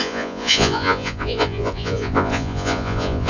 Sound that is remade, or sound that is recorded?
remade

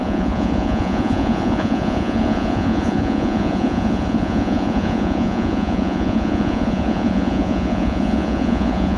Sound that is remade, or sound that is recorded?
remade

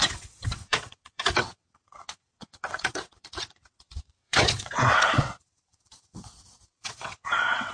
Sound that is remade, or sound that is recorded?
remade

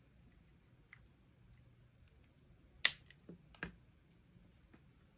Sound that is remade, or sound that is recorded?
recorded